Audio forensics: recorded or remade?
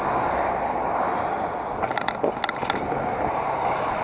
recorded